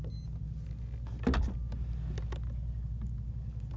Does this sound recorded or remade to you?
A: recorded